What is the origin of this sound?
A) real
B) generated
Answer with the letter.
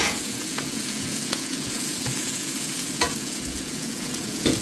B